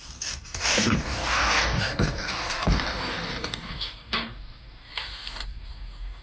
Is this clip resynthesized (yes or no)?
yes